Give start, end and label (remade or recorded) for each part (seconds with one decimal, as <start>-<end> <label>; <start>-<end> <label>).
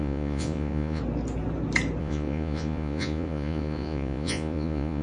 0.0-1.0 remade; 1.0-2.0 recorded; 2.0-5.0 remade